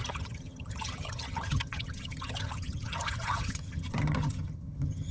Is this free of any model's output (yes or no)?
no